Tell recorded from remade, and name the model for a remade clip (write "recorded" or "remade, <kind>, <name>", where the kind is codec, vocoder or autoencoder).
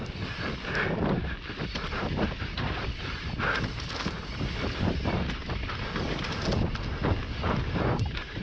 recorded